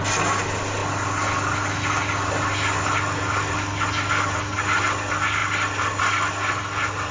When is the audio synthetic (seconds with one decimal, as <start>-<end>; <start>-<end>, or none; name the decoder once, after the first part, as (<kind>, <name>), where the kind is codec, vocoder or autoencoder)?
none